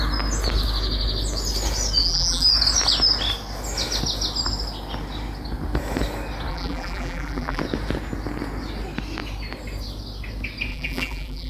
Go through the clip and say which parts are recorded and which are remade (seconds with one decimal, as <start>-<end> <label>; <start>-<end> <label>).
0.0-2.0 recorded; 2.0-2.5 remade; 2.5-6.5 recorded; 6.5-7.6 remade; 7.6-10.7 recorded; 10.7-11.5 remade